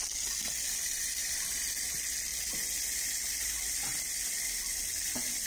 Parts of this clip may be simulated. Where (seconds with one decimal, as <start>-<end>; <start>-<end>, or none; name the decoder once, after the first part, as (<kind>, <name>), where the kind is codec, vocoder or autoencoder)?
1.2-1.9 (vocoder, BigVGAN v2)